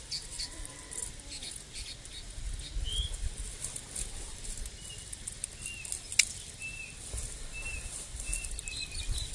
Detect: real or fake real